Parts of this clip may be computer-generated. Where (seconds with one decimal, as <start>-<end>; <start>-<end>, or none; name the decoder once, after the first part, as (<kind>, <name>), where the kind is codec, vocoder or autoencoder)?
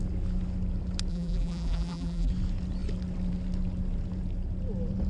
1.1-2.3 (vocoder, BigVGAN v2)